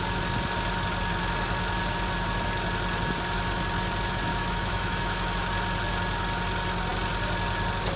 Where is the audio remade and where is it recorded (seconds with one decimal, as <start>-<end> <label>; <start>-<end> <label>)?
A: 0.0-4.3 recorded; 4.3-5.5 remade; 5.5-8.0 recorded